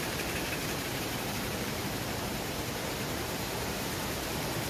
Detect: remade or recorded remade